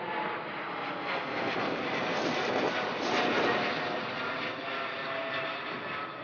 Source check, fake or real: real